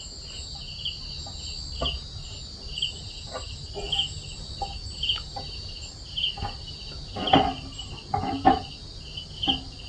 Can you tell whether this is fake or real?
real